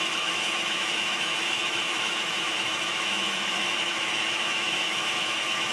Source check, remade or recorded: remade